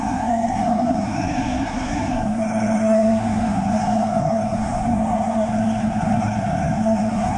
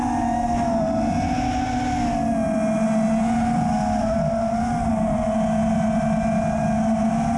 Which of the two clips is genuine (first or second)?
second